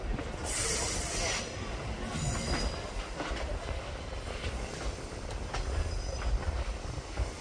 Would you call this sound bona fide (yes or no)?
yes